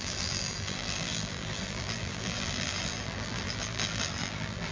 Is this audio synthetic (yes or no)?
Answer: yes